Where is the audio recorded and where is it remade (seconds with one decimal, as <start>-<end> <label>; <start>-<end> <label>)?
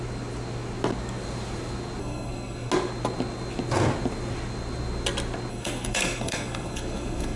0.0-2.0 recorded; 2.0-2.7 remade; 2.7-5.5 recorded; 5.5-7.4 remade